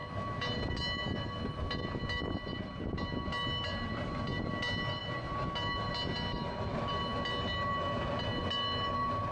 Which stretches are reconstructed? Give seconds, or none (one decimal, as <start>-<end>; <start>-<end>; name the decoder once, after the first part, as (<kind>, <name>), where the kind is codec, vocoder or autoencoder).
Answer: none